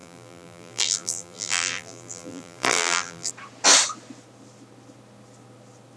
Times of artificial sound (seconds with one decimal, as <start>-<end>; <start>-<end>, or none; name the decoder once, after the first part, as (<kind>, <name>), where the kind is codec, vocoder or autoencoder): 0.0-3.3 (vocoder, BigVGAN v2)